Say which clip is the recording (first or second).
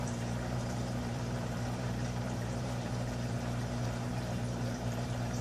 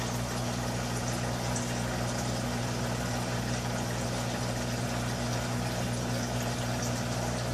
second